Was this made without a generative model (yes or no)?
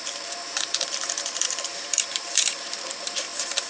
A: no